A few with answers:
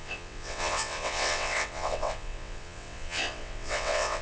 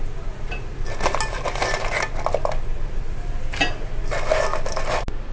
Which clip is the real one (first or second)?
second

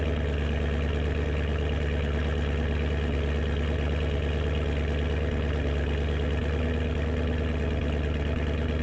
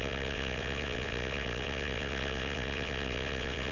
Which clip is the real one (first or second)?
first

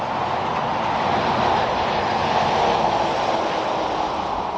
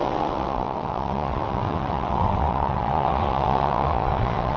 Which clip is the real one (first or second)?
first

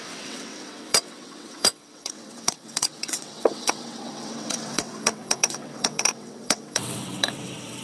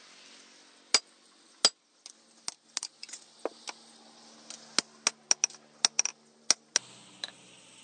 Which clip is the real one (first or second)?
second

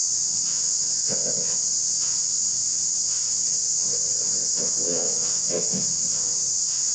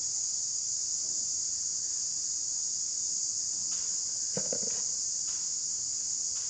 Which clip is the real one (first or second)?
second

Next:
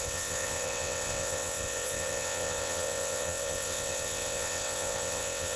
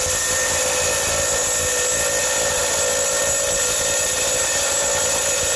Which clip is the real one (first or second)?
second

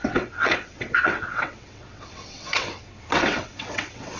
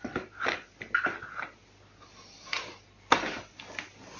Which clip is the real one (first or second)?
second